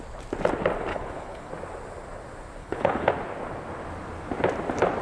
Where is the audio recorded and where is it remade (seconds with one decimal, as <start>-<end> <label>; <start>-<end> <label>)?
0.0-0.9 recorded; 0.9-1.5 remade; 1.5-2.6 recorded; 2.6-3.1 remade; 3.1-5.0 recorded